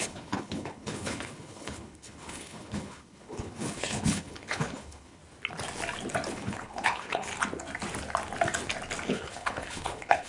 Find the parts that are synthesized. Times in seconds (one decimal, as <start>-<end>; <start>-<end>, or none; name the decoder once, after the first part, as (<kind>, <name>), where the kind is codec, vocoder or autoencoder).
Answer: 0.0-5.2 (codec, HILCodec); 6.3-7.3; 9.1-10.3